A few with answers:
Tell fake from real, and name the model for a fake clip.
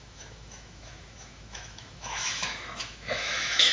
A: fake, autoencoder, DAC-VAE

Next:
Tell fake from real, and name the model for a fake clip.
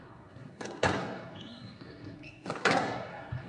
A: fake, codec, SNAC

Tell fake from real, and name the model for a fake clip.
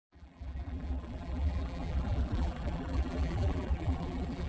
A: fake, vocoder, BigVGAN v2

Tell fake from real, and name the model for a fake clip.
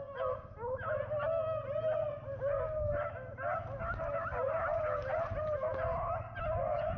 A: real